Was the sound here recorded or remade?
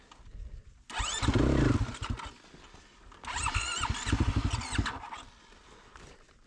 recorded